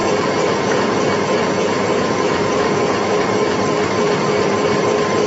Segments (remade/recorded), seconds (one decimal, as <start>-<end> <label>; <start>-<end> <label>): 0.0-3.2 remade; 3.2-5.3 recorded